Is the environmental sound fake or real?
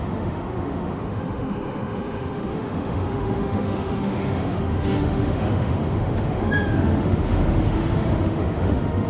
fake